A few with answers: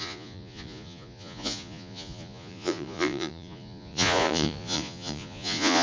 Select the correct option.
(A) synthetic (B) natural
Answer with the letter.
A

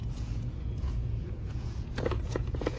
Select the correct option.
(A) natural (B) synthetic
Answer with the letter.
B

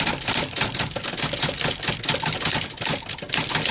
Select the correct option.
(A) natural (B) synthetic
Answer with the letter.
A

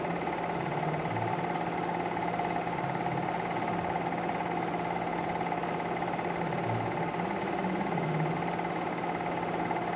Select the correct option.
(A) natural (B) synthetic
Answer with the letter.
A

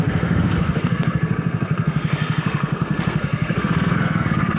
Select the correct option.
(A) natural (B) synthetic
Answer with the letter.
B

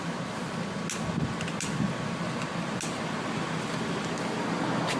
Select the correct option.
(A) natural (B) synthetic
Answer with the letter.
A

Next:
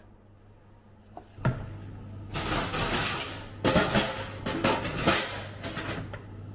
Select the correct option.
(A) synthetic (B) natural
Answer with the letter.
B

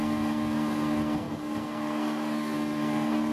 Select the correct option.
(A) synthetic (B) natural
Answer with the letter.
A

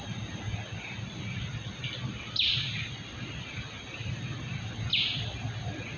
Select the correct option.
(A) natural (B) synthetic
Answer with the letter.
A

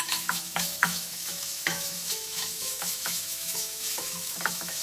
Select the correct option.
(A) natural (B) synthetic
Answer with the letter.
B